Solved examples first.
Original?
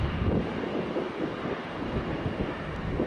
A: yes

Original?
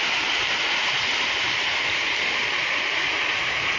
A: no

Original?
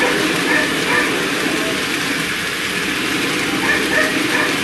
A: yes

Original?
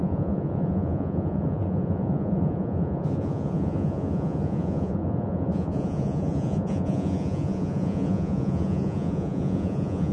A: no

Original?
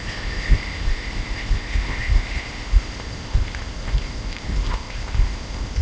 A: no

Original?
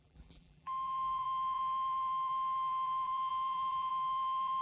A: no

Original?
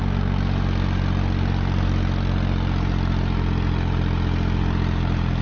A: yes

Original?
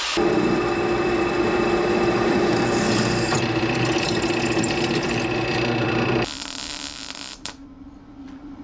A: no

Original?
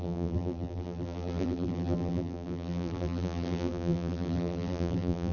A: no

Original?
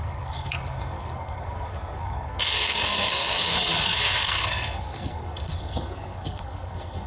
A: no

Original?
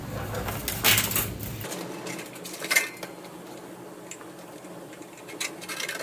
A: yes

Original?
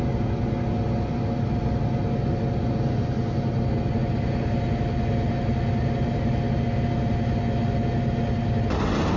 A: yes